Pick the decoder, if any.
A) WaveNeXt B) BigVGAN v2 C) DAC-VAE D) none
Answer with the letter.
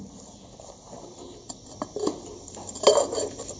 D